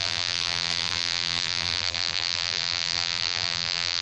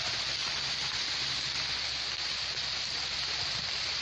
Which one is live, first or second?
second